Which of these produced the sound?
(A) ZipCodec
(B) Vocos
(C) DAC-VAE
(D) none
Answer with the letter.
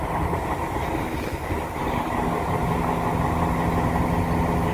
D